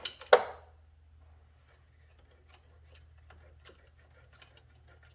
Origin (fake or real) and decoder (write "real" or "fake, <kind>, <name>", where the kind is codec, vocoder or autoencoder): real